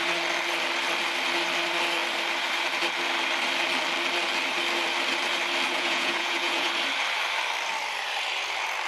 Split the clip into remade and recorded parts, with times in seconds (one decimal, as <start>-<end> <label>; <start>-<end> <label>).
0.0-5.7 recorded; 5.7-6.7 remade; 6.7-8.9 recorded